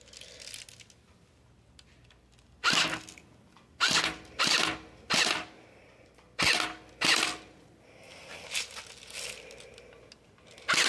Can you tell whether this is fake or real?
real